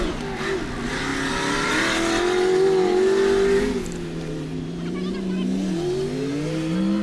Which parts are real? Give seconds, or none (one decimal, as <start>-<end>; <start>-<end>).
0.0-7.0